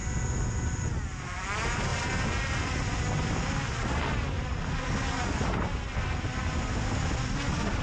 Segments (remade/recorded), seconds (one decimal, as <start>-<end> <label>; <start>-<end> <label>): 0.0-7.8 recorded